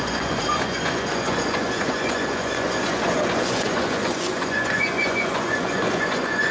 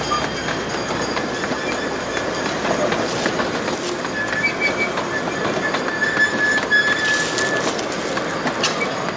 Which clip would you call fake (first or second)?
first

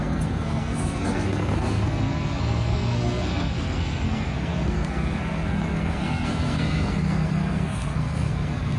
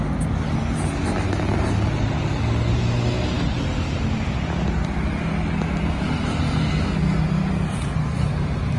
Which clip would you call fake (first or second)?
first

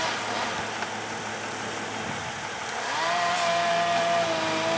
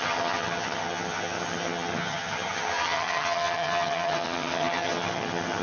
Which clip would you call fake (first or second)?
second